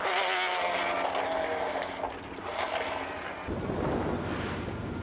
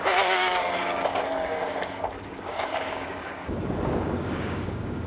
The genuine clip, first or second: first